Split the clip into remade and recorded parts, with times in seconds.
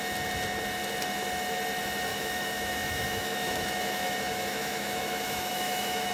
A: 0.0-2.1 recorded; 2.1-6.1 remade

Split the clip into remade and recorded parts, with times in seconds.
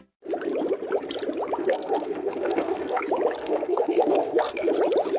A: 0.0-1.6 recorded; 1.6-3.0 remade; 3.0-3.4 recorded; 3.4-4.7 remade; 4.7-5.2 recorded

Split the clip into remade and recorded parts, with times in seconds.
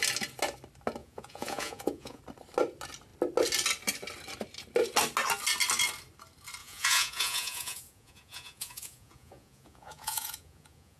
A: 0.0-1.0 recorded; 1.0-2.2 remade; 2.2-6.6 recorded; 6.6-11.0 remade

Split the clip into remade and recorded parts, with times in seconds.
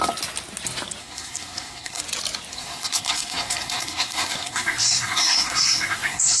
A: 0.0-1.0 recorded; 1.0-2.0 remade; 2.0-2.5 recorded; 2.5-6.4 remade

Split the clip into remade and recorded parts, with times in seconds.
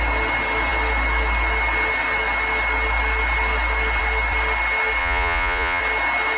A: 0.0-5.0 recorded; 5.0-5.8 remade; 5.8-6.4 recorded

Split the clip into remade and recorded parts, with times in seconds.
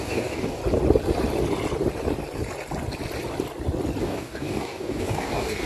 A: 0.0-0.6 remade; 0.6-4.0 recorded; 4.0-5.7 remade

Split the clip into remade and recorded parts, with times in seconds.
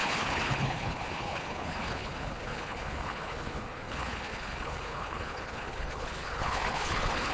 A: 0.0-7.3 remade